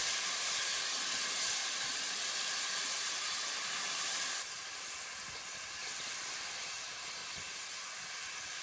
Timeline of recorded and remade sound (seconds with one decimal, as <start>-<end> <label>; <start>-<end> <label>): 0.0-1.6 recorded; 1.6-4.9 remade; 4.9-5.8 recorded; 5.8-6.7 remade; 6.7-8.6 recorded